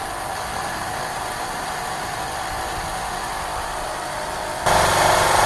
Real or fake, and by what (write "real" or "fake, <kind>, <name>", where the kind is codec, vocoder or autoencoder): real